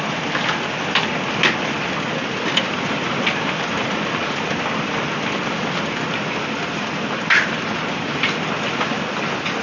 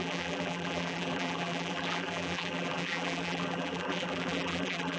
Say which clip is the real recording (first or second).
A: first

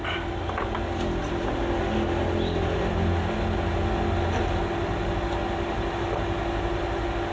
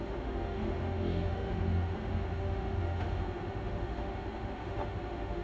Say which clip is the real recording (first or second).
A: first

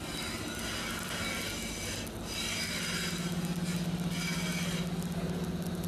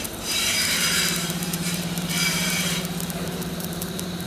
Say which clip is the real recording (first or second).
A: first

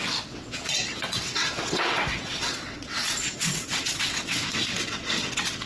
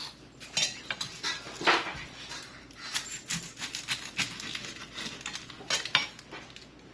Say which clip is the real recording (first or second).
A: second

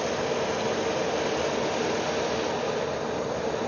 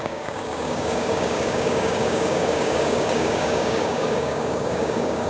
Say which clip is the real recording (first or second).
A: first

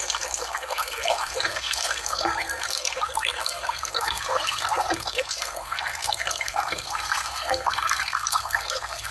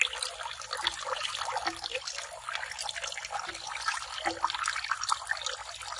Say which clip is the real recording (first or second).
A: second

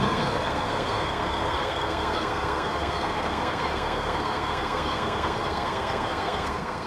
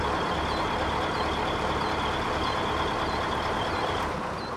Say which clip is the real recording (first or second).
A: second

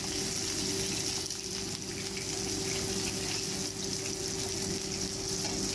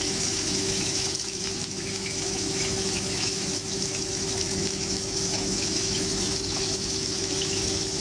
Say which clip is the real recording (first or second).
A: first